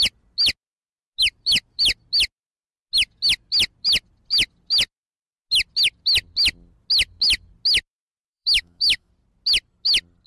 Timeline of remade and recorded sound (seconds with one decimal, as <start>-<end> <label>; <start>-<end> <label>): 0.0-8.3 recorded; 8.3-9.1 remade; 9.1-10.3 recorded